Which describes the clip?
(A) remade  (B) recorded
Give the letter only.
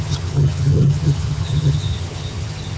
A